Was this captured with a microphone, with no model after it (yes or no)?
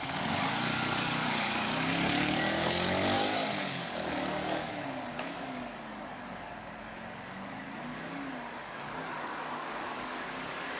no